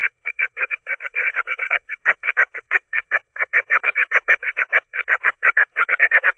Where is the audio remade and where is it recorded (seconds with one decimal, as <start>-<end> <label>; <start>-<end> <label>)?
0.0-6.4 remade